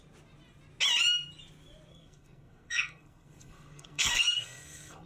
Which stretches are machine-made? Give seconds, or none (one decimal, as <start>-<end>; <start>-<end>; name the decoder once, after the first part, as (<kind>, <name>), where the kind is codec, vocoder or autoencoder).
1.9-5.1 (codec, SNAC)